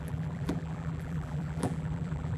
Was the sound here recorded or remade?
remade